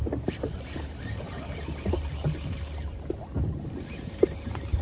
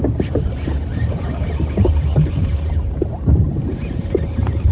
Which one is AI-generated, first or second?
second